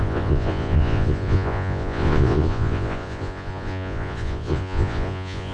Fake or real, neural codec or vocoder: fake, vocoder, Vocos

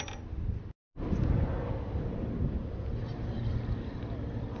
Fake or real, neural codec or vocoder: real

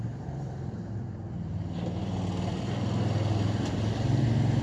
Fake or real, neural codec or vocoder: real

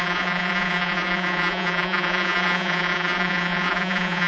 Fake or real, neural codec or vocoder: fake, vocoder, Vocos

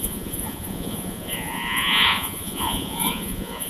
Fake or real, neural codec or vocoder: fake, vocoder, Vocos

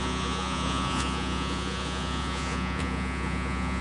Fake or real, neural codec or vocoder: fake, vocoder, Vocos